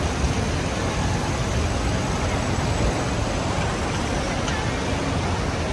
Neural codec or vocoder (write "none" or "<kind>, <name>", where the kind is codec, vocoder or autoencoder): none